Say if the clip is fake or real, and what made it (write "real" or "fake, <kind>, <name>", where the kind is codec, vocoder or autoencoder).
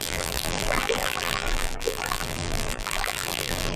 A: fake, vocoder, BigVGAN v2